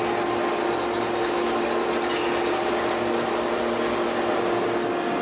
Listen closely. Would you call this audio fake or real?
real